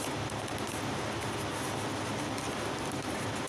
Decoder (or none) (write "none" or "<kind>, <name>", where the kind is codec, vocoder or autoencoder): none